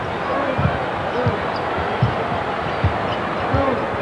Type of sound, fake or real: real